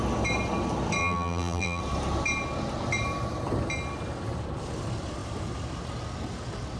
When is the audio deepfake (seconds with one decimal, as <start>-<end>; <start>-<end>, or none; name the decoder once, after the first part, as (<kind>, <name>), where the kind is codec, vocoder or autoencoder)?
1.0-1.8 (vocoder, BigVGAN v2)